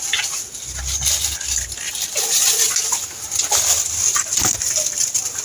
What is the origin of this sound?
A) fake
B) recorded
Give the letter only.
B